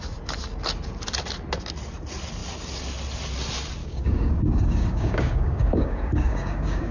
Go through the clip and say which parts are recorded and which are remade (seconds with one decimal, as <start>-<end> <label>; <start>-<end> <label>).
0.0-3.8 recorded; 3.8-6.9 remade